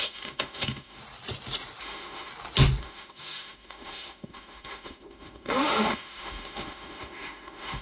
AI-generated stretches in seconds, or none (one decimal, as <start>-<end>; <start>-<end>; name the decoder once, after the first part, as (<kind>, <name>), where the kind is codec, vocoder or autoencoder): 0.0-1.0 (autoencoder, DAC-VAE); 1.8-2.3; 2.8-7.8

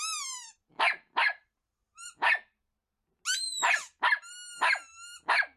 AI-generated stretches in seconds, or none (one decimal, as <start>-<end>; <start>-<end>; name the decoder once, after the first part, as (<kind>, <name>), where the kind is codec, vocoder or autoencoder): none

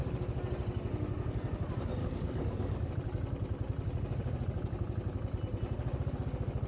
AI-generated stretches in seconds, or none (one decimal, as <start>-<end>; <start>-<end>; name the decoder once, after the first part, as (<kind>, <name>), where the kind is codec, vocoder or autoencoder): 2.0-2.9 (codec, DAC)

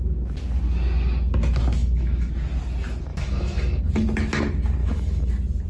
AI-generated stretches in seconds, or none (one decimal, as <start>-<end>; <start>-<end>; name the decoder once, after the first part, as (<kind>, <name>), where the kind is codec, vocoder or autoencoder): 1.8-2.3 (autoencoder, DAC-VAE); 3.1-3.8; 4.8-5.3

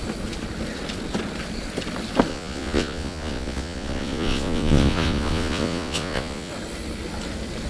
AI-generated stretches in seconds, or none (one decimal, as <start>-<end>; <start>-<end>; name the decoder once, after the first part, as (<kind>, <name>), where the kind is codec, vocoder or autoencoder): 2.3-6.5 (vocoder, Vocos)